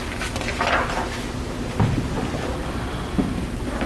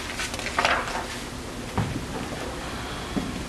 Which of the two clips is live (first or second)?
second